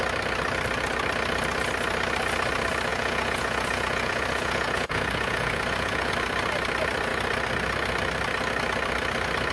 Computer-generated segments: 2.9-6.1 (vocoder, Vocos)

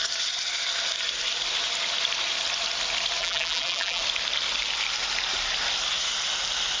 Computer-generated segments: 3.2-4.0 (vocoder, BigVGAN v2)

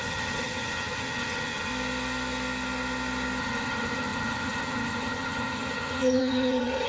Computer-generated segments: 0.0-1.7 (vocoder, HiFi-GAN); 3.4-6.9

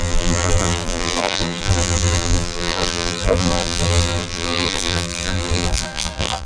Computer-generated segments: 0.0-6.5 (vocoder, BigVGAN v2)

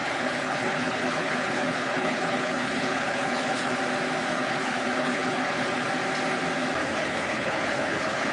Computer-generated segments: 0.0-3.8 (codec, HILCodec); 4.3-5.9; 6.8-8.3

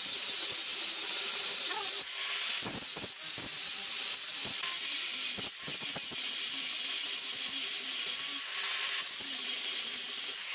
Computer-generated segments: none